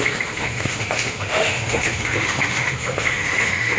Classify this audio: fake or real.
fake